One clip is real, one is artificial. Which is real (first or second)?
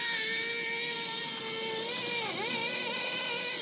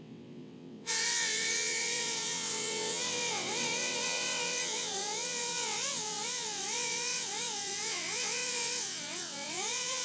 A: first